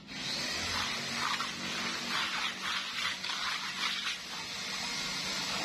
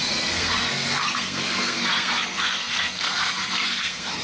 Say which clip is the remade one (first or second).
second